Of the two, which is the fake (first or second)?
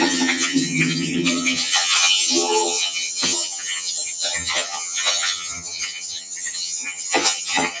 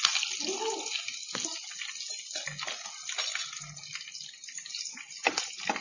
first